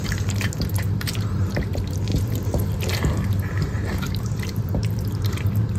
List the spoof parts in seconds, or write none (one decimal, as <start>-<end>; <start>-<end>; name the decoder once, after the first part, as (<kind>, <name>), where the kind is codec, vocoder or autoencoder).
0.0-5.8 (vocoder, BigVGAN v2)